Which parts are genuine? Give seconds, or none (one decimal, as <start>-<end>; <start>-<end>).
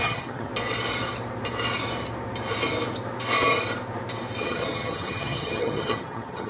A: 0.5-4.4